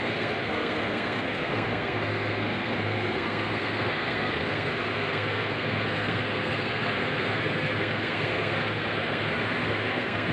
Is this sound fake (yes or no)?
yes